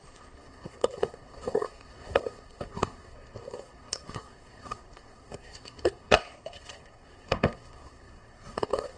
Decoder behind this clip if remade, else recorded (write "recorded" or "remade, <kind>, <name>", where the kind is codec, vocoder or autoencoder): remade, codec, SNAC